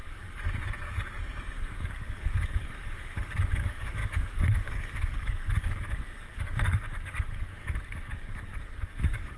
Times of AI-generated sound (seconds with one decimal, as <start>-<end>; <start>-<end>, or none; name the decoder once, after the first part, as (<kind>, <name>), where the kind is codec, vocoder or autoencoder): 0.0-9.4 (codec, DAC)